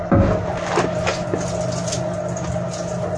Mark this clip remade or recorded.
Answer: recorded